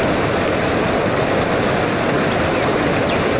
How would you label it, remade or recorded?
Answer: recorded